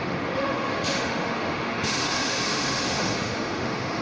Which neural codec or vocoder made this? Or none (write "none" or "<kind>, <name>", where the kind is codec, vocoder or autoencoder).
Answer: autoencoder, DAC-VAE